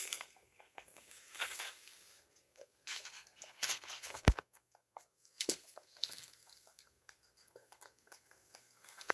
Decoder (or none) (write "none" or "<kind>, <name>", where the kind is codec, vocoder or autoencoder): codec, SNAC